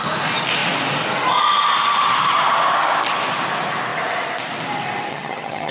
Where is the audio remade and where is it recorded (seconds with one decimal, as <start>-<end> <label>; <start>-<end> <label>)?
0.0-5.1 recorded; 5.1-5.7 remade

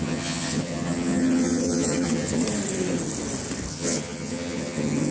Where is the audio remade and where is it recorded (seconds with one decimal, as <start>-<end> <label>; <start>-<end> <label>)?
0.0-2.4 remade; 2.4-3.7 recorded; 3.7-5.1 remade

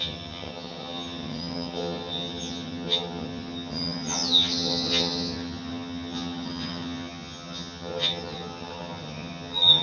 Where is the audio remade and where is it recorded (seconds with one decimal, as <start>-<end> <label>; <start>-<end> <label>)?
0.0-9.8 remade

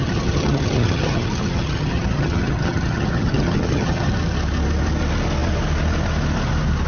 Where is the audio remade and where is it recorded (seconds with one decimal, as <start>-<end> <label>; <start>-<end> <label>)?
0.0-4.1 remade; 4.1-6.9 recorded